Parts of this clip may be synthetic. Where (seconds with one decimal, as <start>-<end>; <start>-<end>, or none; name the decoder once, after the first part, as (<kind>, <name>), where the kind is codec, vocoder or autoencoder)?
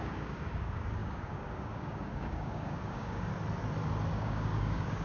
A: 0.0-3.3 (codec, DAC); 4.1-5.0